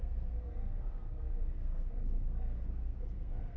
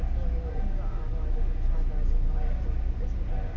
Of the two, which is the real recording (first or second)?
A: second